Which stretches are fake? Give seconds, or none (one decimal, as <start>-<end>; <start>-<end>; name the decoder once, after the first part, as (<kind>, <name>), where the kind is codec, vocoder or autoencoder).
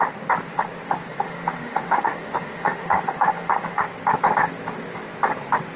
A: 1.1-3.8 (autoencoder, DAC-VAE)